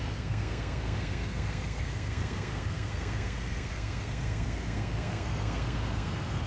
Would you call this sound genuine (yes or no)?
no